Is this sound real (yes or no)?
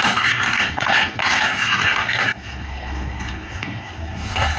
no